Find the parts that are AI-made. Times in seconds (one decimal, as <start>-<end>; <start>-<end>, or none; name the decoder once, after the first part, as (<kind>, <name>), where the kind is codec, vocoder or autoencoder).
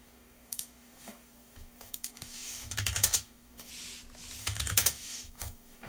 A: 0.0-3.7 (codec, DAC); 4.4-5.9